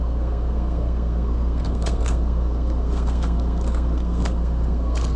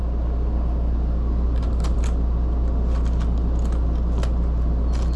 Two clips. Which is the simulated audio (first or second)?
first